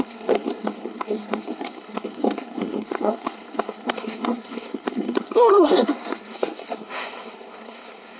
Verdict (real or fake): fake